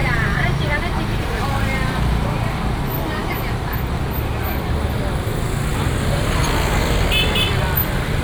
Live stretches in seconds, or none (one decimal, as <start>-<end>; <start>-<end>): 1.4-8.2